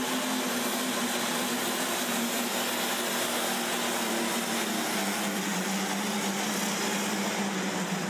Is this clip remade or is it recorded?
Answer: recorded